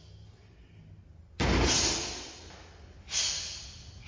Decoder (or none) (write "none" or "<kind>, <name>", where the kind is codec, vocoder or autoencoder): none